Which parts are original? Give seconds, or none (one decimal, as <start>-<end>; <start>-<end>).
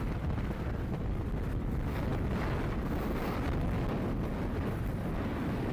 0.0-5.7